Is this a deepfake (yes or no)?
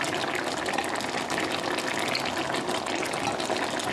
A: no